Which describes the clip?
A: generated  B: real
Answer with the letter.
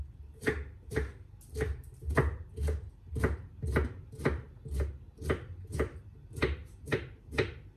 B